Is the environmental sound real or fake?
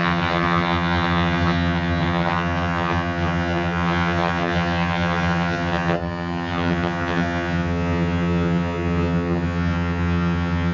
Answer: fake